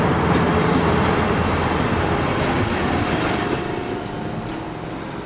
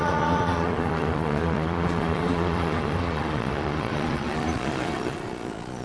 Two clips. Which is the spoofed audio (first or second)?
second